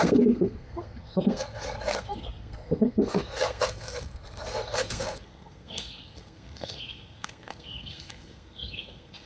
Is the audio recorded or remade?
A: remade